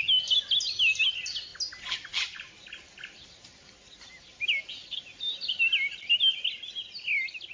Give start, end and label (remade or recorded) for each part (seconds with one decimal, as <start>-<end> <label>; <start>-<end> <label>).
0.0-7.5 recorded